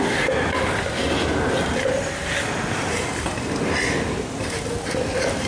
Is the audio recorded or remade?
recorded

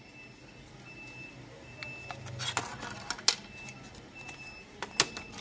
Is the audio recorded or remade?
recorded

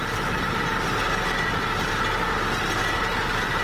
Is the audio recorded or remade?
recorded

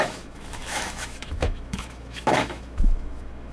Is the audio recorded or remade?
remade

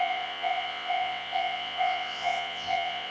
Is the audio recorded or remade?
remade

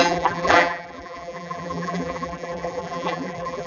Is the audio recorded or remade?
remade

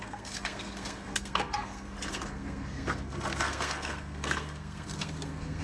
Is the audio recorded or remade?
remade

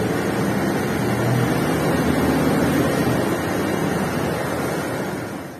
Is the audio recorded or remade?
recorded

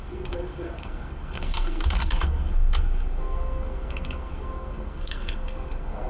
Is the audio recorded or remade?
remade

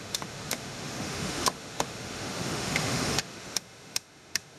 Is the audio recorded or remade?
remade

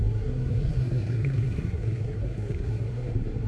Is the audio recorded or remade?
remade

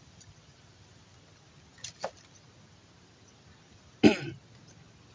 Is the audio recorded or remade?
recorded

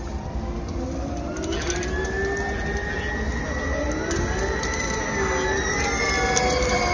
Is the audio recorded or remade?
recorded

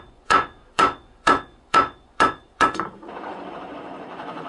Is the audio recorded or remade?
remade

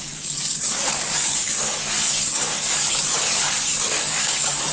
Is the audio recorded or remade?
remade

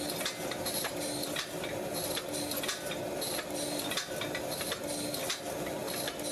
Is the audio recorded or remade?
recorded